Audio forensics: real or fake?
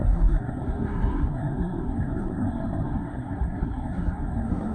fake